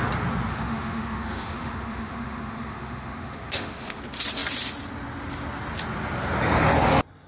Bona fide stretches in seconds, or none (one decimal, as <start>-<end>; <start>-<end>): 0.0-0.5; 4.0-7.3